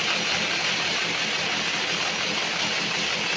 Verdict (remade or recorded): recorded